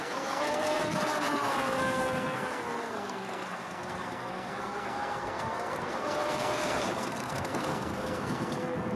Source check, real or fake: fake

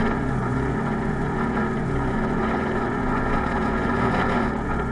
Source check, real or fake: fake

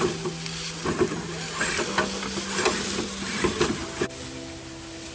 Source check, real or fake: real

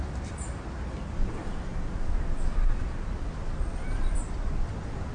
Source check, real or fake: real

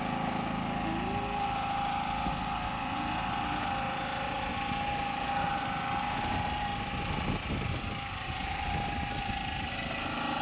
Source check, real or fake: real